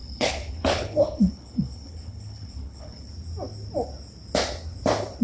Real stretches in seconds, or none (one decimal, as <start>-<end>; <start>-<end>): 3.1-5.2